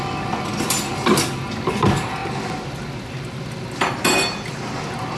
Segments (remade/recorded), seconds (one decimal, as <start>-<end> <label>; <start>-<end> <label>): 0.0-5.2 recorded